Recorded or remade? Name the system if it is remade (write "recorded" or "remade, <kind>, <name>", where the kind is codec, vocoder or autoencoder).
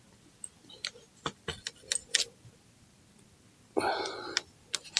recorded